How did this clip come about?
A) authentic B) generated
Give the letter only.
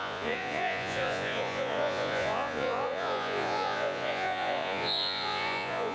B